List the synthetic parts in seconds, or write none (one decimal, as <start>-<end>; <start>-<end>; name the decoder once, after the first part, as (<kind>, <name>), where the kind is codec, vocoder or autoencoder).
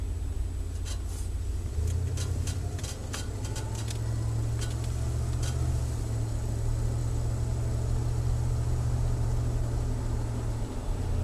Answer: none